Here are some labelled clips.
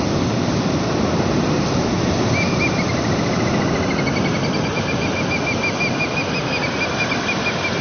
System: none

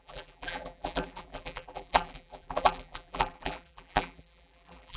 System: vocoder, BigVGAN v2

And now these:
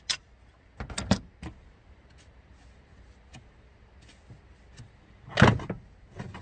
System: none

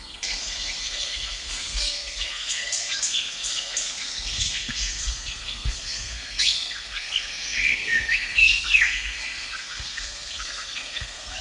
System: codec, SNAC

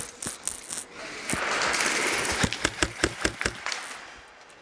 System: none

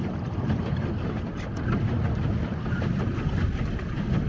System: none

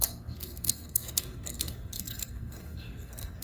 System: codec, SNAC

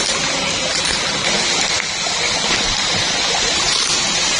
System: none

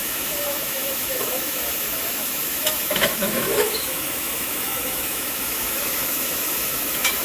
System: autoencoder, DAC-VAE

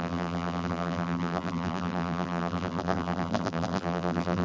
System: vocoder, BigVGAN v2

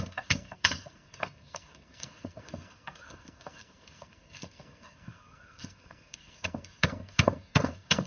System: codec, SNAC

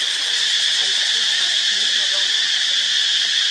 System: none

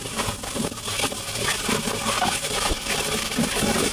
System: none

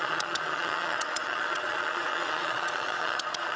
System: vocoder, Vocos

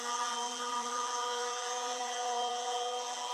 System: vocoder, BigVGAN v2